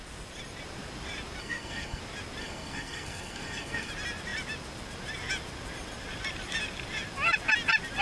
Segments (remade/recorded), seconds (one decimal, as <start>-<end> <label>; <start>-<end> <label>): 0.0-1.4 recorded; 1.4-2.0 remade; 2.0-2.4 recorded; 2.4-3.9 remade; 3.9-8.0 recorded